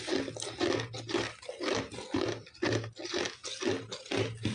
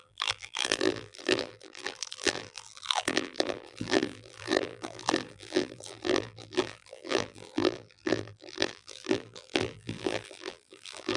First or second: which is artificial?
second